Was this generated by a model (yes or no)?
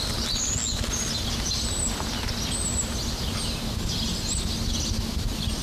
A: no